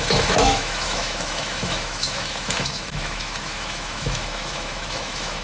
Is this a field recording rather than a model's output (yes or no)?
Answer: no